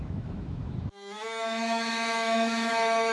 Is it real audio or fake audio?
fake